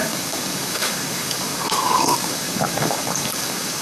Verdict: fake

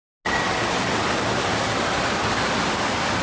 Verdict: real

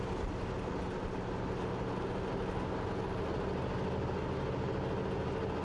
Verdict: real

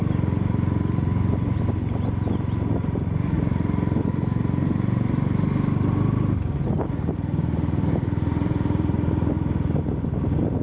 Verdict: real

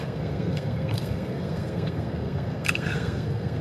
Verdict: fake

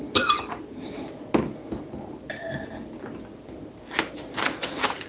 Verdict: real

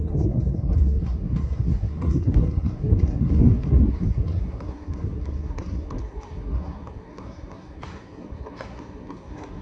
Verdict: fake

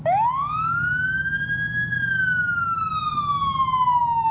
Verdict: real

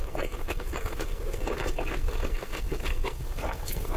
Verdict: fake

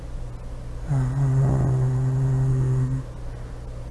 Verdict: real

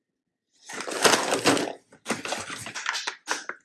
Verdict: real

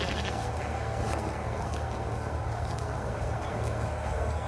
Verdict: fake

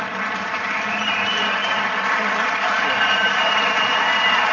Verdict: real